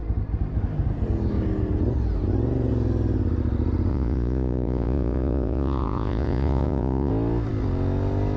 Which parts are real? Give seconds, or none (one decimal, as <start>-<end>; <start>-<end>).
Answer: 0.0-3.9; 7.1-8.4